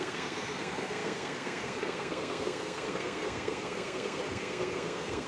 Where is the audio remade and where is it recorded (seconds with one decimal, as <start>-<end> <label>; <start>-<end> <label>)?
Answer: 0.0-5.3 remade